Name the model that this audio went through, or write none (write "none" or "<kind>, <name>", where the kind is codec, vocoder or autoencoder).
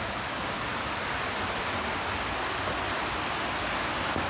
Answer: none